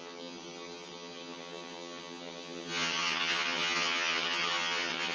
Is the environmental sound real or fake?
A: fake